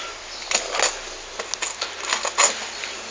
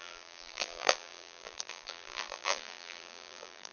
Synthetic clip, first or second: second